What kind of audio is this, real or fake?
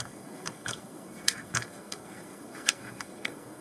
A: fake